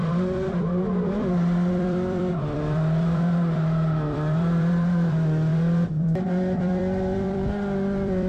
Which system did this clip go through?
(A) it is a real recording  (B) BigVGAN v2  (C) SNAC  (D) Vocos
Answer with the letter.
B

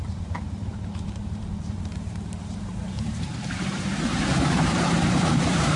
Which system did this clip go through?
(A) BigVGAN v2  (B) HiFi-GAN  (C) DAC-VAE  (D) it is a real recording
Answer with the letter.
A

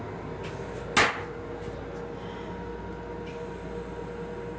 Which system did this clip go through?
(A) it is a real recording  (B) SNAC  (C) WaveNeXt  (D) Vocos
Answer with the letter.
A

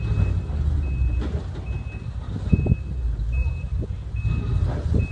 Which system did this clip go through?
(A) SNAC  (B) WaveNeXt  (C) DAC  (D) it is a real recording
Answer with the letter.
D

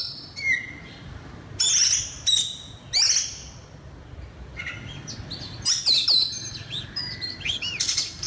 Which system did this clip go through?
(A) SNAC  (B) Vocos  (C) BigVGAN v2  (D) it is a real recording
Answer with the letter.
D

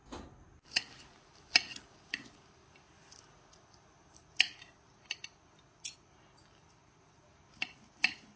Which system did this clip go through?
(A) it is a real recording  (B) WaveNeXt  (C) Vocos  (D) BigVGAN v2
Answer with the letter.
A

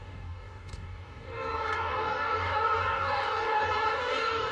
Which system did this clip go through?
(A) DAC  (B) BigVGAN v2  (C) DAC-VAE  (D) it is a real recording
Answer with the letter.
A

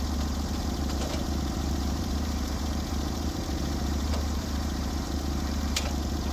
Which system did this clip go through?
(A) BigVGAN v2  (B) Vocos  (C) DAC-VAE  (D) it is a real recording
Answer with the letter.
A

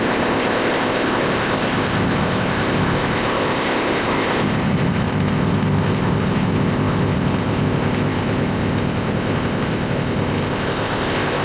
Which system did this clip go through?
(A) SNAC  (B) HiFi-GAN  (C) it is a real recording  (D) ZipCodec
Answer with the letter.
D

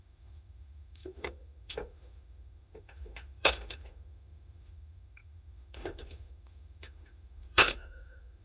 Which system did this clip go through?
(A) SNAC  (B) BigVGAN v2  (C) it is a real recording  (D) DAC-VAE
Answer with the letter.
D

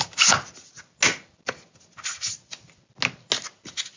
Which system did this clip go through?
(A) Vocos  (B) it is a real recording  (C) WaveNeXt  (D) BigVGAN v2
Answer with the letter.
B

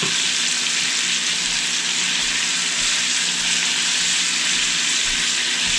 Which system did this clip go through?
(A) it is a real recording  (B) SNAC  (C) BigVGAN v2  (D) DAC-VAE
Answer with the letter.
A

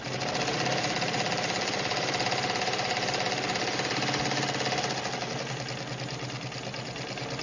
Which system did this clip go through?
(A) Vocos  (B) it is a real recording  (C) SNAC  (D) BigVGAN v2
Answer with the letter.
B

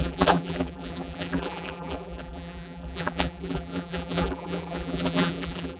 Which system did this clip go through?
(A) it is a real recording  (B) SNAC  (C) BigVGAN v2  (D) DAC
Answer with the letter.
C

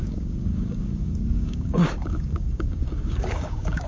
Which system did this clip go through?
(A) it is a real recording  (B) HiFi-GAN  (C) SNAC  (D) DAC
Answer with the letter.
D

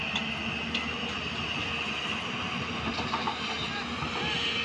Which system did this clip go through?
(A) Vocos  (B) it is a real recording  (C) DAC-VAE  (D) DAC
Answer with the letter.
B